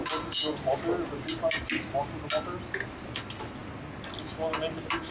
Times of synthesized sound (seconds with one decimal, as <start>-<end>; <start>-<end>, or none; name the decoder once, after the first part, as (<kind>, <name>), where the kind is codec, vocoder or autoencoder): none